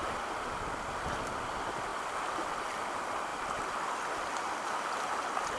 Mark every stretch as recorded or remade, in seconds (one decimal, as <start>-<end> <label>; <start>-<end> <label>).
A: 0.0-5.6 recorded

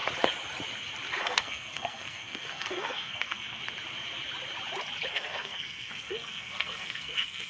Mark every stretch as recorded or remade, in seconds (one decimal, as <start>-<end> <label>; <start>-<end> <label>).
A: 0.0-1.2 recorded; 1.2-3.6 remade; 3.6-5.1 recorded; 5.1-7.5 remade

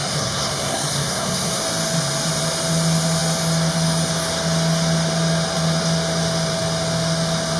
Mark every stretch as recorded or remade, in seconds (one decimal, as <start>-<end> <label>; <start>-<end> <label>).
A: 0.0-1.6 remade; 1.6-7.6 recorded

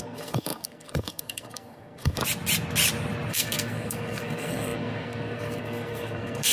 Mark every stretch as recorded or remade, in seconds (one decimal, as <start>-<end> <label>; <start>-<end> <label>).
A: 0.0-2.2 remade; 2.2-3.3 recorded; 3.3-6.5 remade

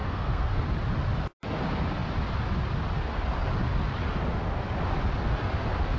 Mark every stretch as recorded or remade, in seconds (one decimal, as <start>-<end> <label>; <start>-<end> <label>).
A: 0.0-0.6 remade; 0.6-6.0 recorded

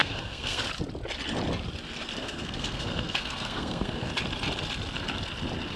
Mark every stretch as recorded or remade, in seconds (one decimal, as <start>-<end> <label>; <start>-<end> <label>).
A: 0.0-0.6 remade; 0.6-2.2 recorded; 2.2-4.1 remade; 4.1-5.8 recorded

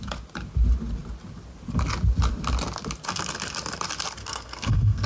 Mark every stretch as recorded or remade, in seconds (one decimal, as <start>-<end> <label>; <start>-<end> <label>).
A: 0.0-4.2 recorded; 4.2-5.1 remade